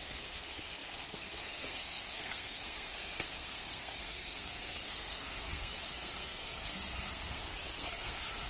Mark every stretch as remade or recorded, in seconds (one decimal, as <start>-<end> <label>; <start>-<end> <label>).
0.0-8.5 remade